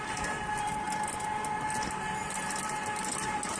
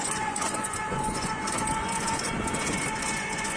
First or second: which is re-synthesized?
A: second